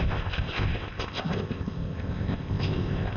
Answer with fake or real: fake